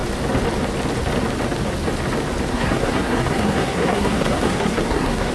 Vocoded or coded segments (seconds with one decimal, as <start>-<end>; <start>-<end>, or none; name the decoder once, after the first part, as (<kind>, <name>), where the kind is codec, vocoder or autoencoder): 2.5-5.3 (codec, SNAC)